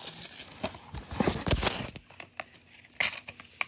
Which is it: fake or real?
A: real